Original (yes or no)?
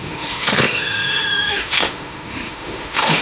no